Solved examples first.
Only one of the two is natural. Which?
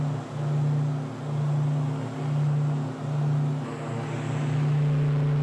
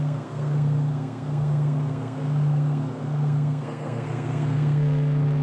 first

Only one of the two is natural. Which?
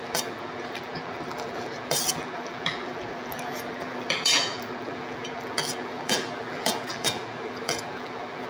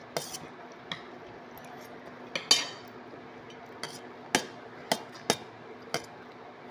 second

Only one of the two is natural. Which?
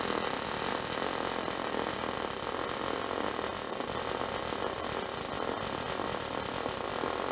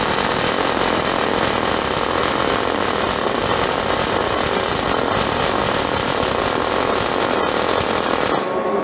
first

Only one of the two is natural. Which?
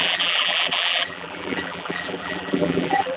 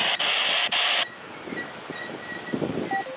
second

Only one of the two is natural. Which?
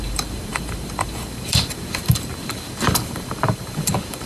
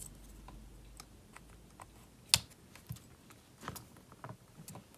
second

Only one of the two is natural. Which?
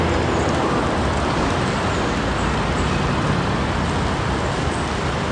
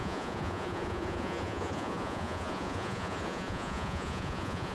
first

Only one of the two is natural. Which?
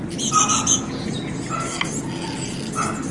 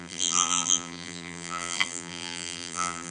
first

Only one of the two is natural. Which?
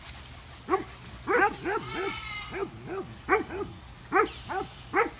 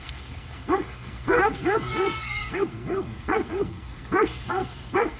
first